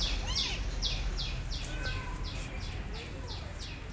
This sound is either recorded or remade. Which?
recorded